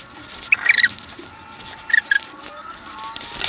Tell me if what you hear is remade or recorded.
recorded